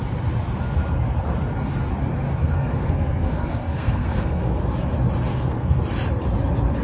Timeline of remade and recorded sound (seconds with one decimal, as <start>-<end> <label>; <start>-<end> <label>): 0.0-2.4 recorded; 2.4-4.6 remade; 4.6-5.3 recorded; 5.3-5.8 remade; 5.8-6.8 recorded